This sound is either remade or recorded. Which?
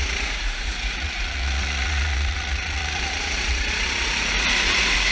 remade